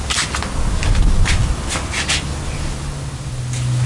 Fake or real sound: real